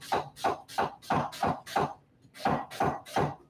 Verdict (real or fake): real